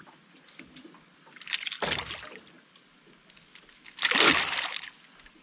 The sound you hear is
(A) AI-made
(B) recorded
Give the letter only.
B